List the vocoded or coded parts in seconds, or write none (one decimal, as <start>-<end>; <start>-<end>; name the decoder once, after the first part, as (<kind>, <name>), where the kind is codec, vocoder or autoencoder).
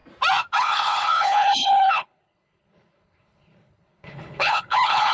0.6-5.1 (codec, HILCodec)